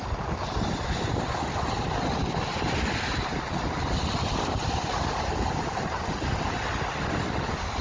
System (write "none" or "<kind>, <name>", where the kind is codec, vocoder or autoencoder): none